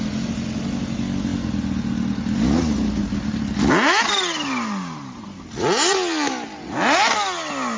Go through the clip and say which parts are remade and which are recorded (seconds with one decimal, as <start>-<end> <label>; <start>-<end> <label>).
0.0-7.8 recorded

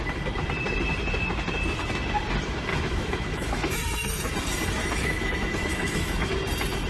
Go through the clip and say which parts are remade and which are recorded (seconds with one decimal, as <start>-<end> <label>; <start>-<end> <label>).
0.0-2.7 recorded; 2.7-4.3 remade; 4.3-4.8 recorded; 4.8-6.3 remade; 6.3-6.9 recorded